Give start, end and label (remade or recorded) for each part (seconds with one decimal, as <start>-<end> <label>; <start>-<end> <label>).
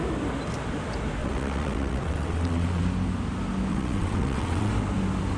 0.0-1.2 recorded; 1.2-2.8 remade; 2.8-3.7 recorded; 3.7-4.7 remade; 4.7-5.4 recorded